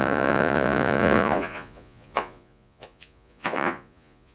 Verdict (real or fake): fake